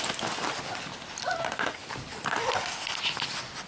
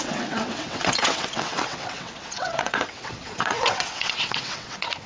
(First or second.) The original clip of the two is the first